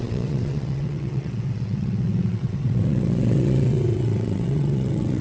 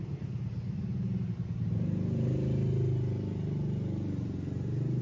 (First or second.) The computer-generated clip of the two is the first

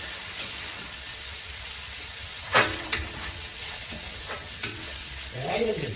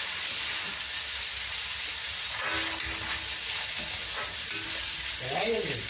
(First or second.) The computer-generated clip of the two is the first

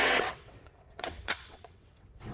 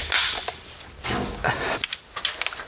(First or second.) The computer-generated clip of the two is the first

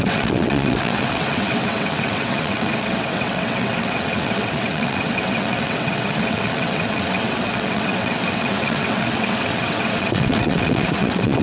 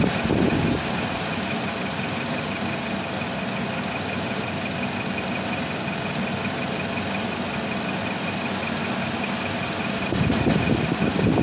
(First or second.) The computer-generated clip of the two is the first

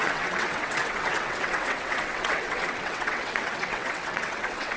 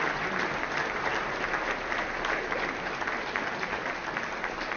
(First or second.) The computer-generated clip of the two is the first